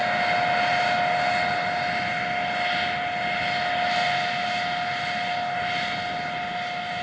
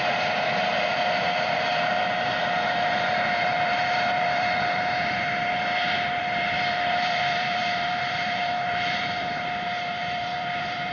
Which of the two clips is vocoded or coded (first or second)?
second